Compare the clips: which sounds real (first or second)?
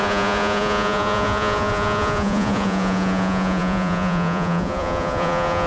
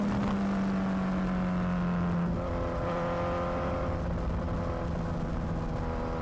second